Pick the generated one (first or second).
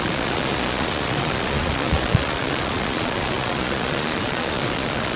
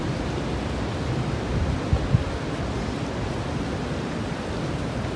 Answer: first